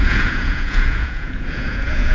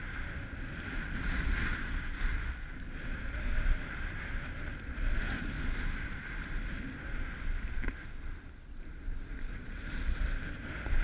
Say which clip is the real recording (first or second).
second